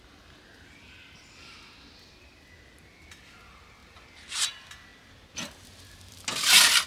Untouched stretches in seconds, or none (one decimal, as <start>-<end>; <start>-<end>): 0.0-6.9